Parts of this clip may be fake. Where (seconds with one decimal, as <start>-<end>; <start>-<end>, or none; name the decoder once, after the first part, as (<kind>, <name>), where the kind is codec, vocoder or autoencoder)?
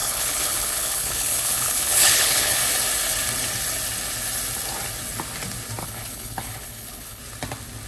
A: 0.0-2.6 (codec, HILCodec); 5.8-7.2